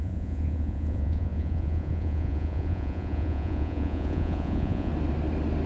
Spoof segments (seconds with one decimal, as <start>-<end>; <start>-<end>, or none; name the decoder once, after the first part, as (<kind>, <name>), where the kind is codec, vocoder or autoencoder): 0.0-4.9 (vocoder, Vocos)